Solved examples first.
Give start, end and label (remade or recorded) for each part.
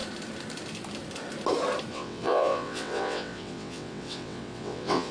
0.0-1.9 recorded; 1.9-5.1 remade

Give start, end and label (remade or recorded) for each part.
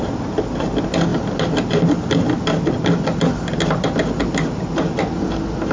0.0-5.7 recorded